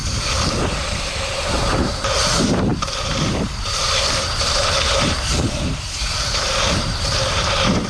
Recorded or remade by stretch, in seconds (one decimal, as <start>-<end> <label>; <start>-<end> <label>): 0.0-7.9 remade